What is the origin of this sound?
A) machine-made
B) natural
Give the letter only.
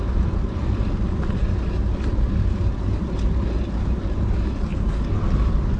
B